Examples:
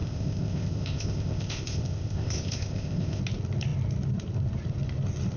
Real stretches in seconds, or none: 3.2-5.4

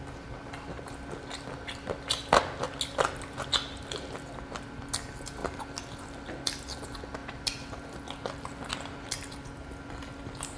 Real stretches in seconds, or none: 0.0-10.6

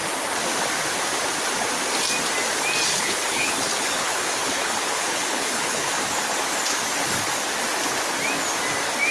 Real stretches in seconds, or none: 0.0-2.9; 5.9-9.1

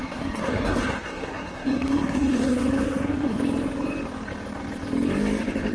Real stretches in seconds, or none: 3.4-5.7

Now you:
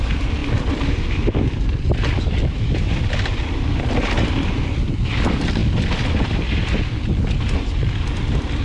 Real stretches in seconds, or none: 0.0-8.6